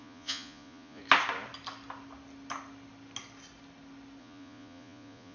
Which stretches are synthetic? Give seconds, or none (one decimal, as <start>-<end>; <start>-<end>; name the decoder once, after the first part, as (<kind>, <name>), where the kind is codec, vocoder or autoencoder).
0.0-1.0 (vocoder, Vocos); 4.2-5.3